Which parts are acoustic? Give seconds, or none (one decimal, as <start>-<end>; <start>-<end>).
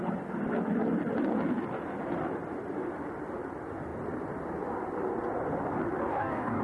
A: 0.0-6.1